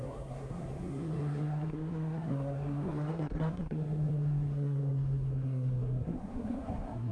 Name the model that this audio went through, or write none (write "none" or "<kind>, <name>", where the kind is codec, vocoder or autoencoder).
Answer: codec, SNAC